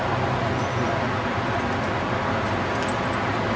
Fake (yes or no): no